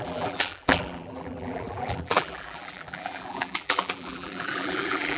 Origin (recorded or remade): remade